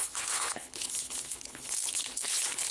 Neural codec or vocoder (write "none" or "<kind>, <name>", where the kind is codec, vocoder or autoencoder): codec, HILCodec